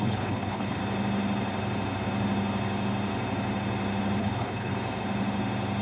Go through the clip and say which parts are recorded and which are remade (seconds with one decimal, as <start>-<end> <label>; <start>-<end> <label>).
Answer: 0.0-0.8 remade; 0.8-4.2 recorded; 4.2-4.7 remade; 4.7-5.8 recorded